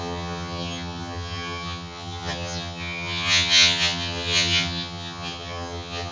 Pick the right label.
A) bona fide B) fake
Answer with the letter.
B